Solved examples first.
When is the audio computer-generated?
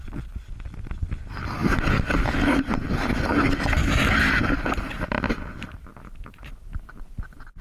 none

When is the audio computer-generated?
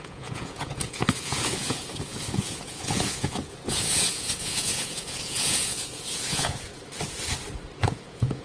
0.0-6.7 (vocoder, Vocos); 7.8-8.4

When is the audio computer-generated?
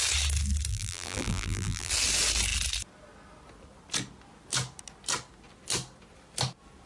0.7-1.9 (vocoder, BigVGAN v2)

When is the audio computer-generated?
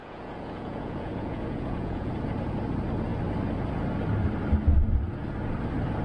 0.0-2.1 (vocoder, Vocos)